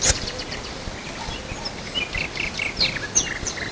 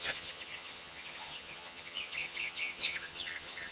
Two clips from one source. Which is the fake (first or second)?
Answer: second